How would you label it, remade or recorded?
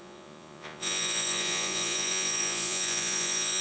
remade